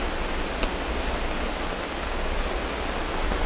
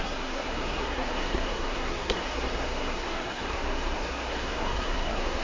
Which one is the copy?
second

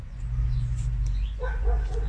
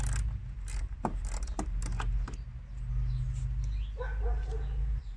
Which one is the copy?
first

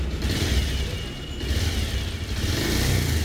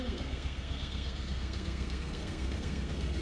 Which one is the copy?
second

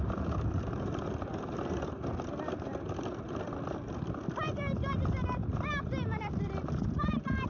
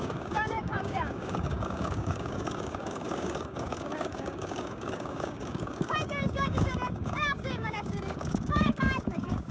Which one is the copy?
second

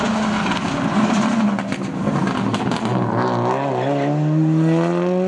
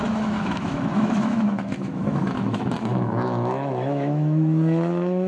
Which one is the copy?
second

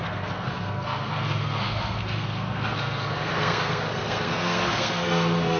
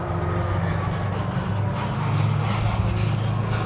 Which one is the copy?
first